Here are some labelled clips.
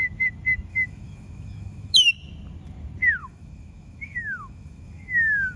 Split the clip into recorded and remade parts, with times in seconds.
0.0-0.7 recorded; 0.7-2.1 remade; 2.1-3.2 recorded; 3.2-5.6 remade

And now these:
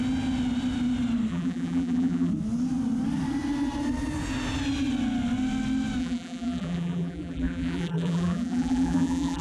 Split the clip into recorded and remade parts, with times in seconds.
0.0-1.3 recorded; 1.3-2.3 remade; 2.3-6.0 recorded; 6.0-9.4 remade

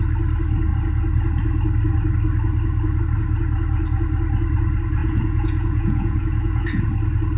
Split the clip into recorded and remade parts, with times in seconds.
0.0-5.0 recorded; 5.0-6.8 remade; 6.8-7.4 recorded

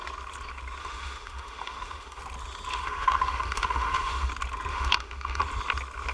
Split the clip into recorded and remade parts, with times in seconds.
0.0-0.8 recorded; 0.8-2.2 remade; 2.2-2.7 recorded; 2.7-4.3 remade; 4.3-4.7 recorded; 4.7-5.4 remade; 5.4-6.1 recorded